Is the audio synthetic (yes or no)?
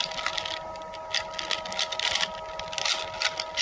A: no